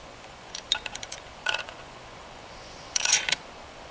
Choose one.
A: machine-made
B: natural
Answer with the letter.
A